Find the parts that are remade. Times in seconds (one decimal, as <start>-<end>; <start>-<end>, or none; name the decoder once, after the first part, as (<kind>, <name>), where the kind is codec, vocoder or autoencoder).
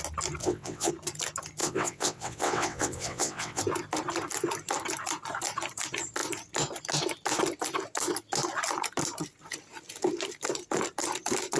0.4-0.9 (vocoder, WaveNeXt); 1.6-3.6